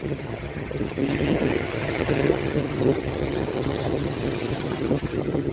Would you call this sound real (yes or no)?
no